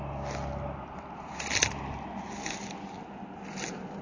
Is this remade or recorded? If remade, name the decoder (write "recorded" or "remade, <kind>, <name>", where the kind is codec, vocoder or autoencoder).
recorded